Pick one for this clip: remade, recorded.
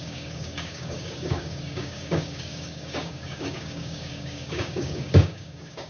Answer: remade